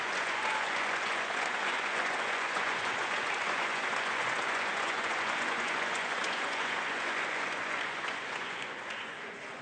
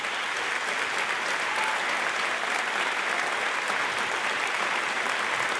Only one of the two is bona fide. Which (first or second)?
second